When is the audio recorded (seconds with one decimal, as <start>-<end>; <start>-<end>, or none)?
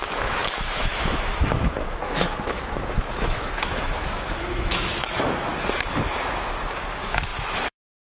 5.5-6.2